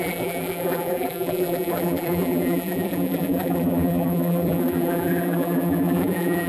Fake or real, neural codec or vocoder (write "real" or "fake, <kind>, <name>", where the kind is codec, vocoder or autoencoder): fake, vocoder, BigVGAN v2